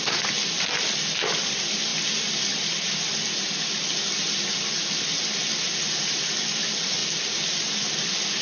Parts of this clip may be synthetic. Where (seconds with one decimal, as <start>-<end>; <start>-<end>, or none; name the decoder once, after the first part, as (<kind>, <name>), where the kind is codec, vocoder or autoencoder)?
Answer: none